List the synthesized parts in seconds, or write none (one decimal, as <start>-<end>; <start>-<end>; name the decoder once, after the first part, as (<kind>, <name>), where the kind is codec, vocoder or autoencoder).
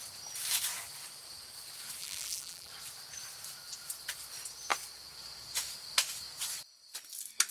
2.0-2.7 (vocoder, BigVGAN v2)